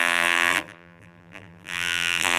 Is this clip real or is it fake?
fake